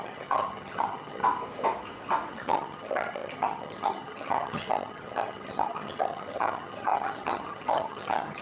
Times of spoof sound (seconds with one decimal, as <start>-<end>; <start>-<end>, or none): 0.0-1.2; 2.3-8.4